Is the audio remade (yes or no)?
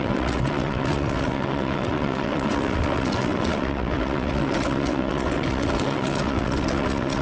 yes